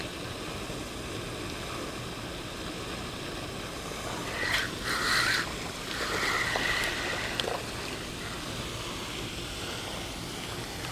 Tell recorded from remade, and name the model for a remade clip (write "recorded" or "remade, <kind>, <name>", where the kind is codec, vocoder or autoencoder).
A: recorded